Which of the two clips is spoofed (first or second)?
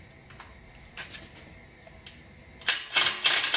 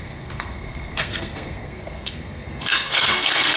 second